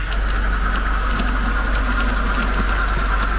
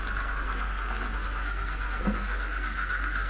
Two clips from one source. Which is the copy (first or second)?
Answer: second